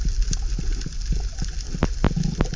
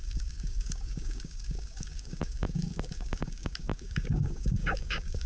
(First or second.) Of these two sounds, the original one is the first